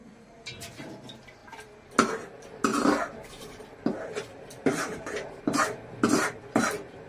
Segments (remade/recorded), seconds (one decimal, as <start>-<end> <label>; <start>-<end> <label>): 0.0-0.6 remade; 0.6-2.7 recorded; 2.7-5.4 remade; 5.4-7.1 recorded